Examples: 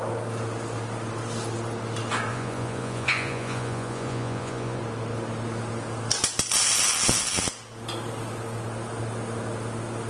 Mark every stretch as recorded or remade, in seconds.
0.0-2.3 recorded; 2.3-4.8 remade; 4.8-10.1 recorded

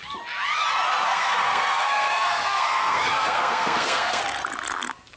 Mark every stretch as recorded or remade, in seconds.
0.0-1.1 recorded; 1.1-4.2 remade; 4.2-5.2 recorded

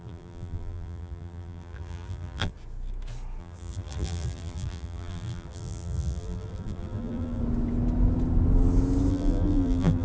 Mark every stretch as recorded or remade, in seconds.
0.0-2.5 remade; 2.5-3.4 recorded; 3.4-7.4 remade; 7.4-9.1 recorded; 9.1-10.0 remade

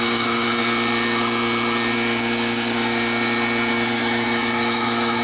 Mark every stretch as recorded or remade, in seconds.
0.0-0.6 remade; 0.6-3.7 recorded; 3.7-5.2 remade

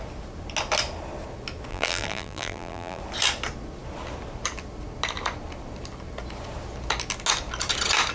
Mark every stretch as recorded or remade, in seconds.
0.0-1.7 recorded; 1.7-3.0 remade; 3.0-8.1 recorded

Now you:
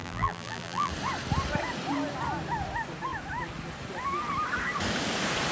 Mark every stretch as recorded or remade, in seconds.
0.0-0.9 remade; 0.9-5.5 recorded